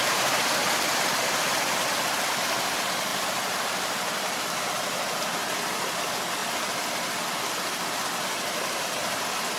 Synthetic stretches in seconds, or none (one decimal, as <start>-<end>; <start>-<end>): 3.1-4.6